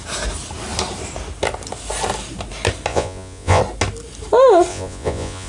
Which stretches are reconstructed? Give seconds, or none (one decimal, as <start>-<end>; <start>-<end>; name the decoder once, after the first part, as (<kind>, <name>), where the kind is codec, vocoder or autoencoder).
2.9-3.6 (vocoder, Vocos); 4.7-5.5

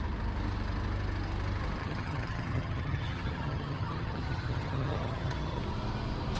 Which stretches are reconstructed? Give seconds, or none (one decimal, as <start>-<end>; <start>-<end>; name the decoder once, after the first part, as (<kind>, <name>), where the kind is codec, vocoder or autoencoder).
1.8-5.6 (vocoder, HiFi-GAN)